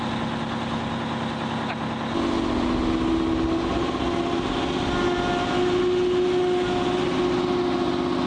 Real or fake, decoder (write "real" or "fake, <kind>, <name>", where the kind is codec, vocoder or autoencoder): real